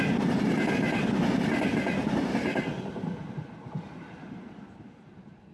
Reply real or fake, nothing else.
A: real